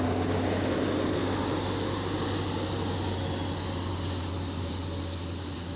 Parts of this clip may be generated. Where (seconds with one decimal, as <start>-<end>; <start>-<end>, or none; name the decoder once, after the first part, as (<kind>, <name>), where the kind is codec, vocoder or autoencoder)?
none